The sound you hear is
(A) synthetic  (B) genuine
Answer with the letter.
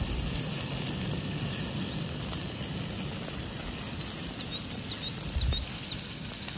B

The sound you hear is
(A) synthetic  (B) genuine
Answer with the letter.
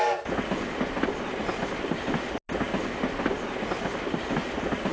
B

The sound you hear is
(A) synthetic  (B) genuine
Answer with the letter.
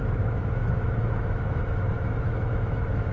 A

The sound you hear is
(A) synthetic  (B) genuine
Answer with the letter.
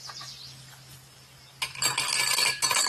B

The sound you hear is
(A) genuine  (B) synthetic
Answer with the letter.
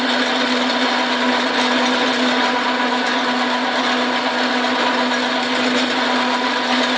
A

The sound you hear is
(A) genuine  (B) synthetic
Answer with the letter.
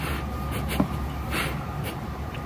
A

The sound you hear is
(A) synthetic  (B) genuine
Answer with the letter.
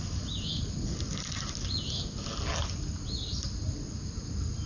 B